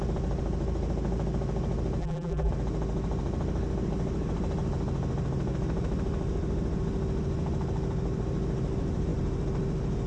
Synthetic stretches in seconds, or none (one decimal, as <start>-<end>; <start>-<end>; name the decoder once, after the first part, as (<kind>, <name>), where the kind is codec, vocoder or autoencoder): 2.0-2.5 (vocoder, BigVGAN v2)